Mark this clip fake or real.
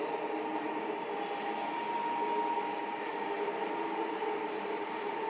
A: real